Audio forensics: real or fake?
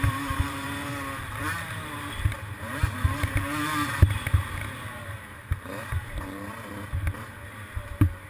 fake